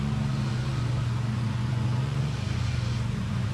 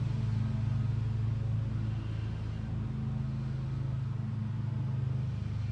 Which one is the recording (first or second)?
second